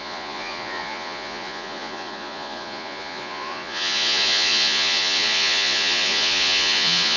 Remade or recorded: remade